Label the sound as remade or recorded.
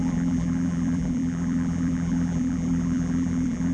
remade